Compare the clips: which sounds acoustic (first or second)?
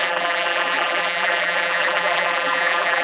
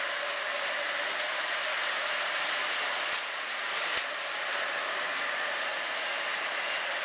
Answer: second